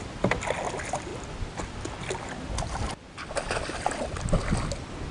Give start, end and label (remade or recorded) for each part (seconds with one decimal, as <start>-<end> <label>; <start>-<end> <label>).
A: 0.0-5.1 recorded

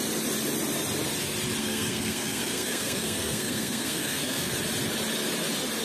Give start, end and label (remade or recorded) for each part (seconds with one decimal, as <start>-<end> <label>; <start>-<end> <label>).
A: 0.0-1.6 recorded; 1.6-4.5 remade; 4.5-5.8 recorded

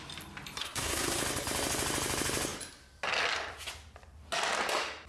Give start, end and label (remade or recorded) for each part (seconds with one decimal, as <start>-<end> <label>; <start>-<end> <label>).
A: 0.0-0.6 recorded; 0.6-1.2 remade; 1.2-5.1 recorded

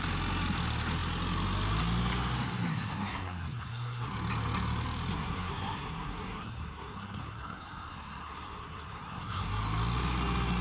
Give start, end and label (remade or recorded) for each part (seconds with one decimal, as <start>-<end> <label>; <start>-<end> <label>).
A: 0.0-2.7 recorded; 2.7-4.1 remade; 4.1-5.1 recorded; 5.1-9.6 remade; 9.6-10.6 recorded

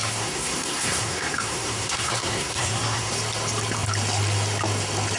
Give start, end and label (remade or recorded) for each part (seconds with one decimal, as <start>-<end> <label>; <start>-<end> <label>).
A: 0.0-3.1 remade; 3.1-5.2 recorded

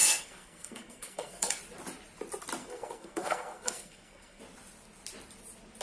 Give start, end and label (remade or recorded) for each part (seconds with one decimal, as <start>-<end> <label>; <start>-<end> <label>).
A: 0.0-1.6 remade; 1.6-2.6 recorded; 2.6-4.4 remade; 4.4-5.8 recorded

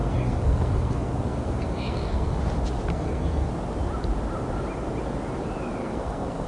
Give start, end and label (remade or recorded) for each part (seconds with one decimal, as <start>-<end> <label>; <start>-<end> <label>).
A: 0.0-2.4 remade; 2.4-2.9 recorded; 2.9-3.5 remade; 3.5-5.8 recorded; 5.8-6.5 remade